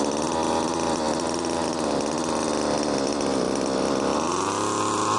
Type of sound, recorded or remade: recorded